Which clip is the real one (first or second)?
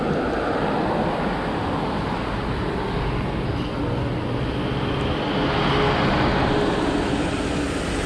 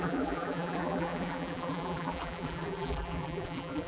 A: first